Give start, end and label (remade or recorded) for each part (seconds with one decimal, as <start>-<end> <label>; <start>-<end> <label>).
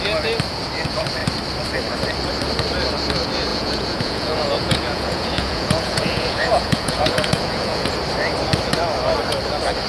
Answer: 0.0-3.5 recorded; 3.5-7.9 remade; 7.9-9.9 recorded